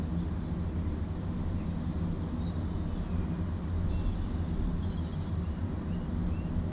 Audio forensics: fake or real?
real